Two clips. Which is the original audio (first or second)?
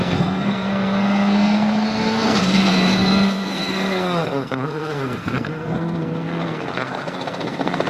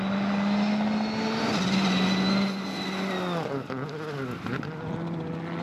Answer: second